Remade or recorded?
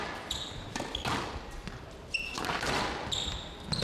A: recorded